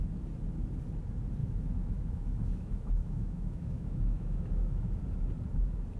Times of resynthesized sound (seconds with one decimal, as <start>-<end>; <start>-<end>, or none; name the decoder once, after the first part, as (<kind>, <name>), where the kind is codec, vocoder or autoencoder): 1.4-5.0 (autoencoder, DAC-VAE)